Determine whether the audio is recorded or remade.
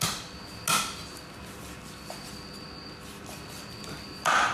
recorded